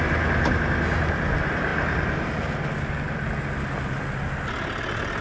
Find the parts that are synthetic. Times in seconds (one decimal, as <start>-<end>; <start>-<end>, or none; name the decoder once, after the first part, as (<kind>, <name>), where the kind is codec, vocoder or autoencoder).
none